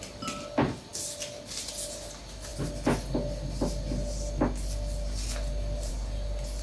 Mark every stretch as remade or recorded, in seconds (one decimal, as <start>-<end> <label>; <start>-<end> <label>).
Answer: 0.0-6.6 recorded